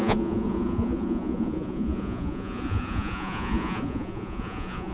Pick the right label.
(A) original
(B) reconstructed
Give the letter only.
B